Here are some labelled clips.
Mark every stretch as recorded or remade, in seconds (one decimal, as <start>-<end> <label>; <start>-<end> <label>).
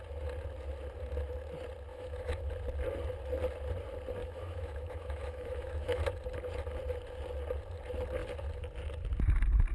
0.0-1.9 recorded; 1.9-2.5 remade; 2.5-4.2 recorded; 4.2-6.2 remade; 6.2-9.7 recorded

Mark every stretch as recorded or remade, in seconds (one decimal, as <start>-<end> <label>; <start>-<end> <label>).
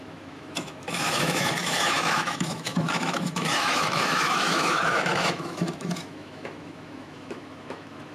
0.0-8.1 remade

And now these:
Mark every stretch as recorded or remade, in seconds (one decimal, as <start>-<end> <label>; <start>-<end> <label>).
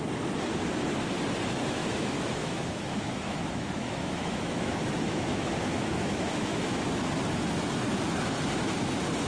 0.0-1.8 recorded; 1.8-6.8 remade; 6.8-9.3 recorded